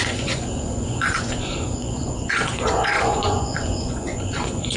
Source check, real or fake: fake